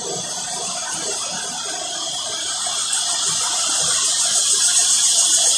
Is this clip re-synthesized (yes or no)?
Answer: no